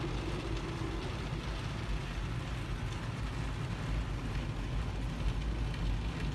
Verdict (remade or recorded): recorded